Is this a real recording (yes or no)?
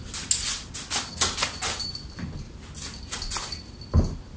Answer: yes